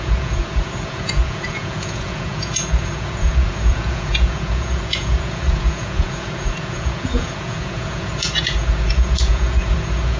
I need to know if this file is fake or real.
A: fake